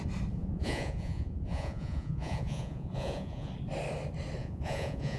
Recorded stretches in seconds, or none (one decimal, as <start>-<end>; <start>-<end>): 0.0-0.4; 3.5-4.4